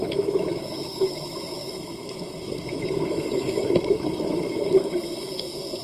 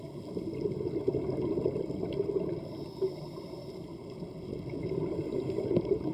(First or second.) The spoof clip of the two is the first